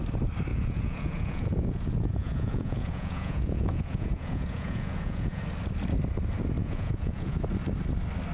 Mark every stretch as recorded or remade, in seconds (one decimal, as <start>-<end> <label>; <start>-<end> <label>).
0.0-0.5 recorded; 0.5-5.4 remade; 5.4-6.6 recorded; 6.6-7.4 remade; 7.4-8.3 recorded